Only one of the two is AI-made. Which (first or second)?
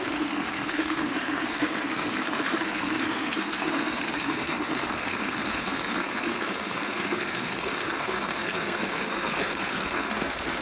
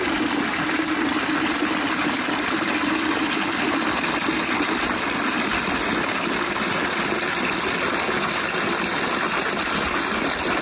first